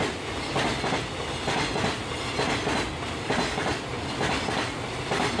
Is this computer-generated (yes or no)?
no